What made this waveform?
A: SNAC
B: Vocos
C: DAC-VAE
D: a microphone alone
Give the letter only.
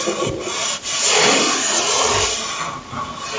D